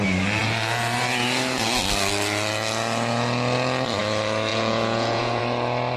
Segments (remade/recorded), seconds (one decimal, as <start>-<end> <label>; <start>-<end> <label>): 0.0-4.5 recorded; 4.5-5.4 remade; 5.4-6.0 recorded